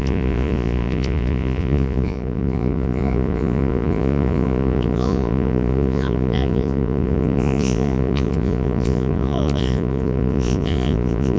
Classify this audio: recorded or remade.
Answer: remade